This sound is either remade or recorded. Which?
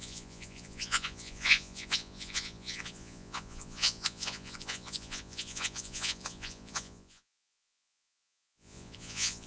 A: remade